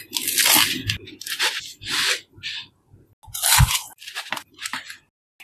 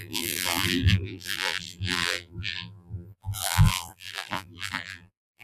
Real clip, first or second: first